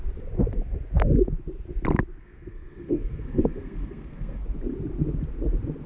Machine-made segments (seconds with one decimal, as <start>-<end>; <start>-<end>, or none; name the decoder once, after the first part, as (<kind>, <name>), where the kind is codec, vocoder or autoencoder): 2.2-4.4 (codec, SNAC)